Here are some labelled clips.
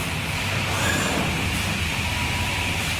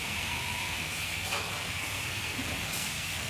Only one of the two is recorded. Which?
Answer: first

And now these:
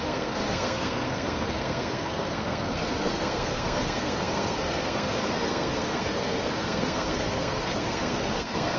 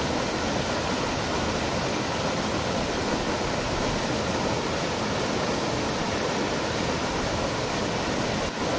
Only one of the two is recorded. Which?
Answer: second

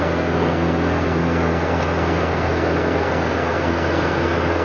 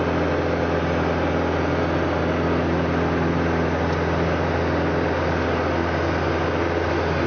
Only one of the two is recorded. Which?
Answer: second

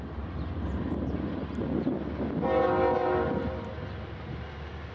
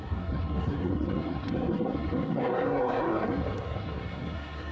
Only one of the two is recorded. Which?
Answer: first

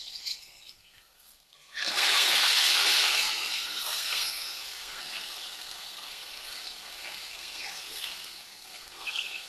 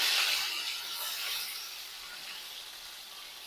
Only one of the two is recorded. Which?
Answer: second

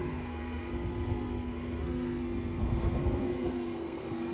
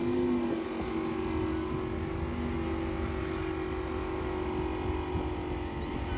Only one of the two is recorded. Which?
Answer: second